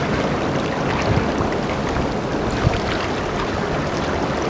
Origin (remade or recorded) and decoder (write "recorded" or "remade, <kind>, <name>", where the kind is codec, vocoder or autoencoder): recorded